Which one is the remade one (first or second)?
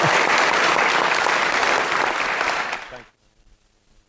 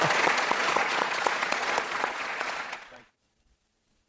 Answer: second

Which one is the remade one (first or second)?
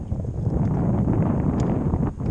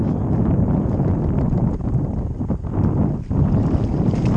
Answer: second